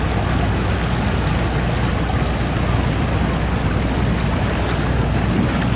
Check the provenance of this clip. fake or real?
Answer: real